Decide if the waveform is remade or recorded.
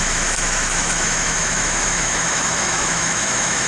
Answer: remade